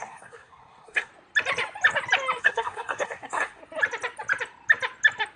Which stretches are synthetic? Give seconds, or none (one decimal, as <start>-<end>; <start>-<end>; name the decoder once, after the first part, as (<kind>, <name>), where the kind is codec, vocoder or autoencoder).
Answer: 0.0-1.1 (codec, SNAC); 2.4-3.6